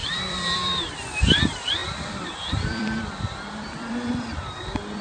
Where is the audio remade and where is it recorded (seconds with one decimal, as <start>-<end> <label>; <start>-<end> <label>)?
0.0-1.4 remade; 1.4-1.8 recorded; 1.8-5.0 remade